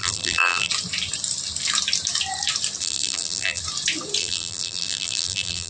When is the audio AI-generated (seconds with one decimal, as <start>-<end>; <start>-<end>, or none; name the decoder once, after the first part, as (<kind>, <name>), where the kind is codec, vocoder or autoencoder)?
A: 0.0-0.7 (vocoder, BigVGAN v2); 2.8-3.6; 4.2-5.7